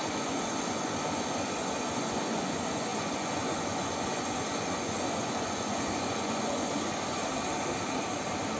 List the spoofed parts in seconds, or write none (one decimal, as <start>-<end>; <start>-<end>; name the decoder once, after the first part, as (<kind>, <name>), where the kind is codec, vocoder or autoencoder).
0.0-7.2 (vocoder, Vocos)